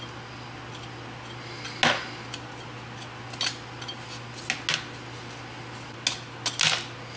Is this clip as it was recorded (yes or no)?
yes